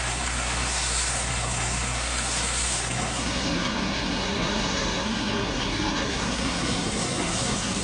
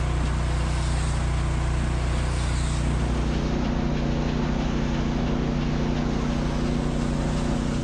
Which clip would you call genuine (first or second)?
second